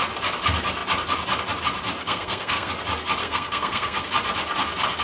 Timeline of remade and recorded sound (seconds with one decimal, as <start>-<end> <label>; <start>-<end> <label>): 0.0-2.0 recorded; 2.0-2.7 remade; 2.7-3.2 recorded; 3.2-4.1 remade; 4.1-5.0 recorded